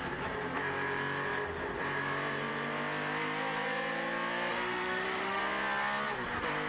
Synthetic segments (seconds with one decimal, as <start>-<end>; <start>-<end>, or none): 4.5-5.4